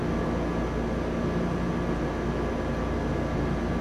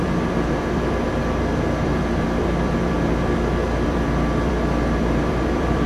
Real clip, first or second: first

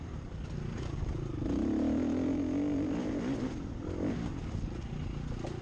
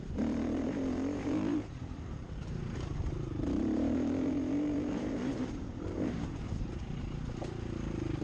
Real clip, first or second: first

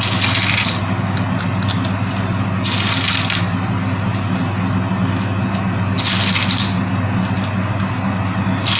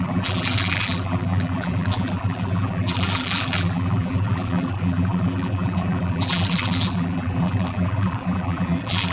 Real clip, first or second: first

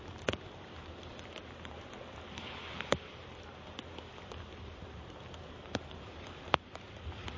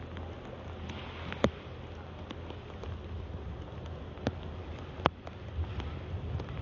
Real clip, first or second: second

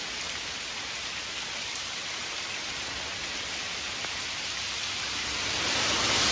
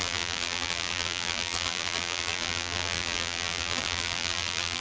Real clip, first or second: first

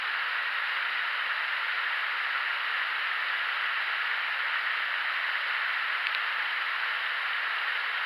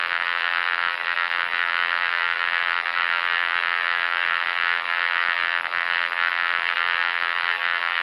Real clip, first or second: first